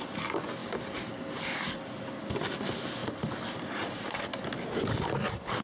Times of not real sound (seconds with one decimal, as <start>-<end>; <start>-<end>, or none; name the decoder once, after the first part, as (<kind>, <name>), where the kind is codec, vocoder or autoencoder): none